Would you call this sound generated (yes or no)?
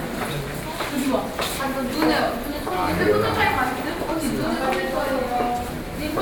no